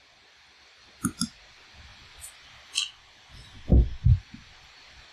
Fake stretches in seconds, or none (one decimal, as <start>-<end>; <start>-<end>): none